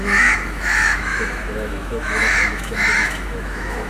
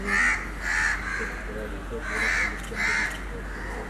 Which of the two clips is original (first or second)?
second